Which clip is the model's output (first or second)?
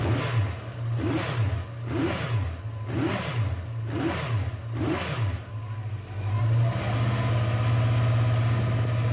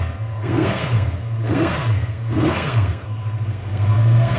second